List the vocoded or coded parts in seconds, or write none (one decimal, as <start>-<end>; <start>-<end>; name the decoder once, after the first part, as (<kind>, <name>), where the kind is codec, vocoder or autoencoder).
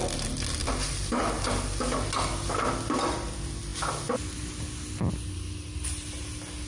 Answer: none